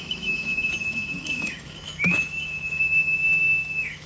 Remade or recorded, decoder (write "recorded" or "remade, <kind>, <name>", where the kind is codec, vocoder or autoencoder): remade, autoencoder, DAC-VAE